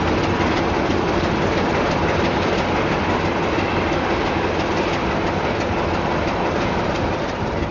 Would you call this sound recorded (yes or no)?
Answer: yes